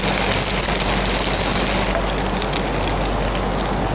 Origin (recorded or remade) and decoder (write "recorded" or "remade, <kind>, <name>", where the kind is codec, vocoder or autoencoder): recorded